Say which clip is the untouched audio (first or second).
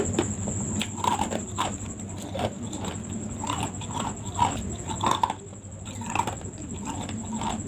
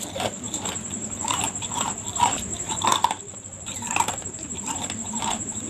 first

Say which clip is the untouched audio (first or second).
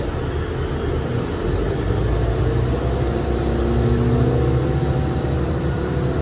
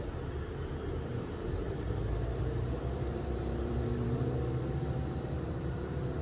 first